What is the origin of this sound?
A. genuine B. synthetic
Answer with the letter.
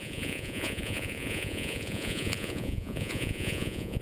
B